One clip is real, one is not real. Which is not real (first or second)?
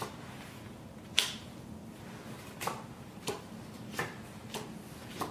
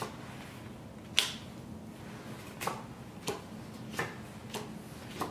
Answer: first